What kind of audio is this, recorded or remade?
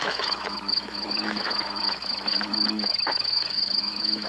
remade